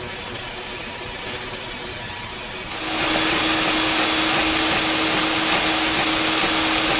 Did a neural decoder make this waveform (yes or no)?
no